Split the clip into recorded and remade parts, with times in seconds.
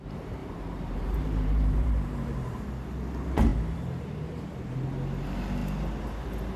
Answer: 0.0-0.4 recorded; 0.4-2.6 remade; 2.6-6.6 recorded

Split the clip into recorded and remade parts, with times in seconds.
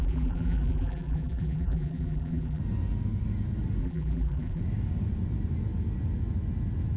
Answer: 0.0-2.6 remade; 2.6-3.8 recorded; 3.8-4.6 remade; 4.6-7.0 recorded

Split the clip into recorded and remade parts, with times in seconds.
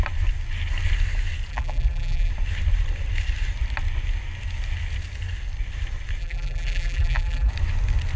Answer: 0.0-1.5 recorded; 1.5-2.3 remade; 2.3-6.2 recorded; 6.2-7.5 remade; 7.5-8.2 recorded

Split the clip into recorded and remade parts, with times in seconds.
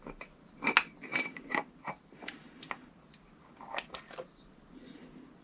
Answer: 0.0-5.4 recorded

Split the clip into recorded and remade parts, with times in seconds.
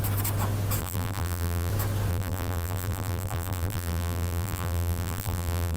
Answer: 0.0-0.8 recorded; 0.8-1.7 remade; 1.7-2.1 recorded; 2.1-5.8 remade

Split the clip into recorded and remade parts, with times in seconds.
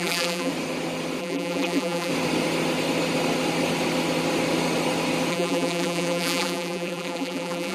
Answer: 0.0-0.5 remade; 0.5-1.2 recorded; 1.2-2.1 remade; 2.1-5.3 recorded; 5.3-7.7 remade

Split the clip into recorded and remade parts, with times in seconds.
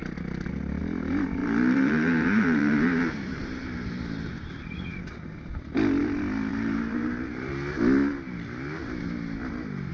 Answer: 0.0-1.4 recorded; 1.4-5.0 remade; 5.0-6.5 recorded; 6.5-7.5 remade; 7.5-9.9 recorded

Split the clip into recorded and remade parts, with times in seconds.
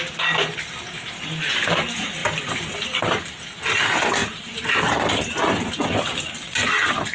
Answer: 0.0-7.1 recorded